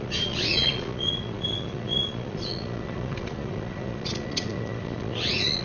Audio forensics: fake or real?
fake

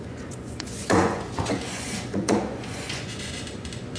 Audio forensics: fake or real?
fake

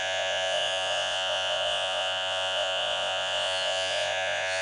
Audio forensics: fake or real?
fake